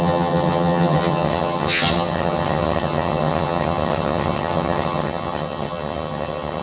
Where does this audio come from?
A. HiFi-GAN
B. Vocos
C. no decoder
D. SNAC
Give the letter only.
A